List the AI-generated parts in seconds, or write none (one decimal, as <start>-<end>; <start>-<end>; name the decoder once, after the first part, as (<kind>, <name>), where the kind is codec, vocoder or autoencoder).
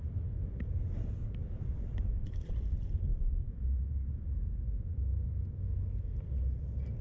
1.4-2.6 (vocoder, BigVGAN v2); 3.1-5.3